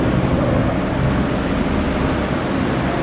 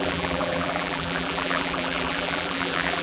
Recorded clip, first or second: first